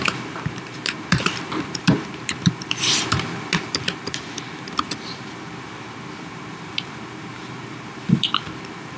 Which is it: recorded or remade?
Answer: remade